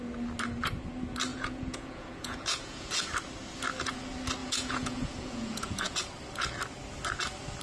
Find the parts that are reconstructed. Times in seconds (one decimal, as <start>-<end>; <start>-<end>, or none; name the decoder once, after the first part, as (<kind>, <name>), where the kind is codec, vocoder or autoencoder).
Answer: 1.3-2.9 (vocoder, Vocos); 4.4-6.0